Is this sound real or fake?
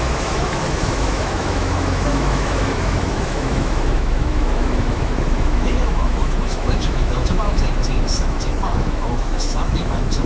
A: fake